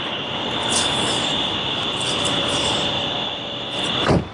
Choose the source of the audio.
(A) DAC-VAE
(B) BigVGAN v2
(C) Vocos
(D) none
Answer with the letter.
B